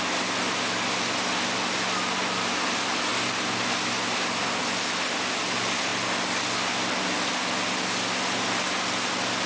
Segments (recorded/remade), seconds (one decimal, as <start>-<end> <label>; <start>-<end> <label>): 0.0-9.5 recorded